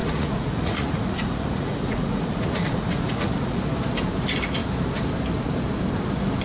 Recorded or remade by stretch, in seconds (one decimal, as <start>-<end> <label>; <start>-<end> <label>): 0.0-3.6 remade; 3.6-6.4 recorded